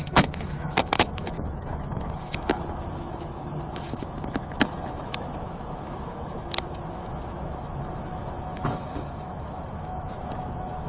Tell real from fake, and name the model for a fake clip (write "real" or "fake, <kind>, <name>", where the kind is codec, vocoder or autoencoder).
fake, autoencoder, DAC-VAE